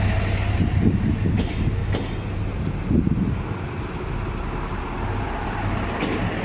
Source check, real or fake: real